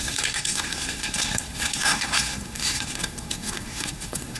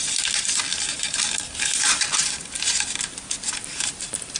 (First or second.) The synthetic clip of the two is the first